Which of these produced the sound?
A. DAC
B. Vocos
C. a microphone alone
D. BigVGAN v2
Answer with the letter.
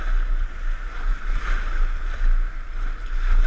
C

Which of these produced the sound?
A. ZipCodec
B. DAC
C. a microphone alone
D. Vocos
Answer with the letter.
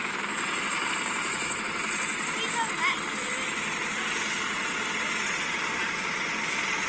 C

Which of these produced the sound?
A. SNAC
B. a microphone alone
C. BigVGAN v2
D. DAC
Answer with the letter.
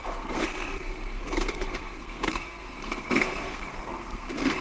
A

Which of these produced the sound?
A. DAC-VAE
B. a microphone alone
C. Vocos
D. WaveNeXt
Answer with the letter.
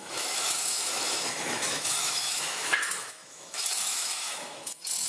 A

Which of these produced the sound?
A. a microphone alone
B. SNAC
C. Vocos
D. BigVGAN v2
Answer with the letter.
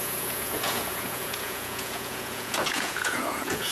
C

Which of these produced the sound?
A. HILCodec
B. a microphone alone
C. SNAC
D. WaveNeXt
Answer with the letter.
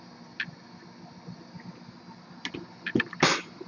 B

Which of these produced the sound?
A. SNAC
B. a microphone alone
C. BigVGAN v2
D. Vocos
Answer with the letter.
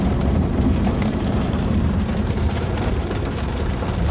C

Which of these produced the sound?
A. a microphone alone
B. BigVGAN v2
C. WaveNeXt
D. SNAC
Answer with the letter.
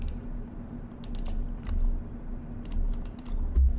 A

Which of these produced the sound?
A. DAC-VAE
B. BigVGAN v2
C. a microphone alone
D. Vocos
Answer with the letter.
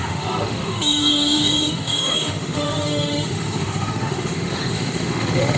A